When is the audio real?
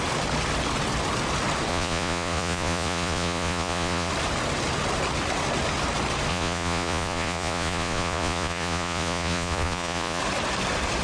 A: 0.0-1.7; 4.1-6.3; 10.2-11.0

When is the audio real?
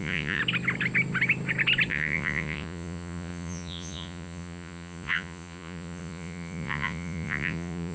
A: 0.4-1.9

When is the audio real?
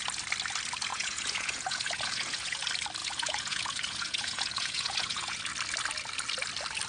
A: 0.0-0.9; 2.6-3.0; 5.4-6.9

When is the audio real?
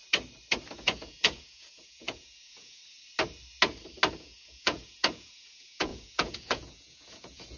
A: 0.0-0.7; 2.8-4.2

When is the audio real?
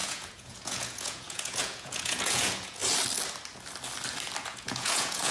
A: 2.8-4.4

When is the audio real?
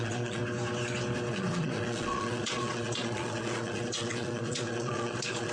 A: 0.4-1.3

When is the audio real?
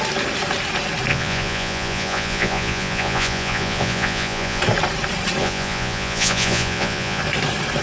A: 0.0-1.1; 4.6-5.4; 7.2-7.8